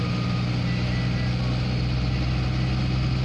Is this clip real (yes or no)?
yes